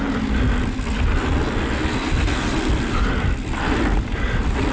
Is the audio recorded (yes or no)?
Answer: yes